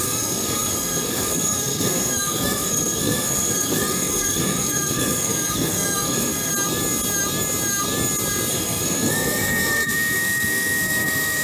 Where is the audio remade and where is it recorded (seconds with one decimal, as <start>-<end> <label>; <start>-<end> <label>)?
0.0-6.5 remade; 6.5-8.5 recorded; 8.5-11.4 remade